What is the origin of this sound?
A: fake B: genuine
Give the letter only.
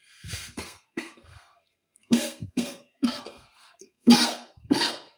A